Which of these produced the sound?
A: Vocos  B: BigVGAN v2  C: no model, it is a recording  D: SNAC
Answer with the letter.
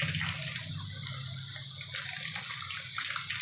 C